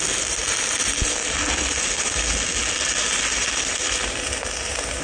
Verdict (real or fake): real